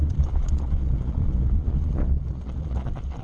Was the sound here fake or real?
fake